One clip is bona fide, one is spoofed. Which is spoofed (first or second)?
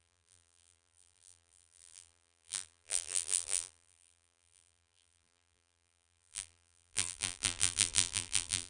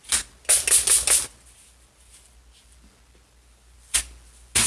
first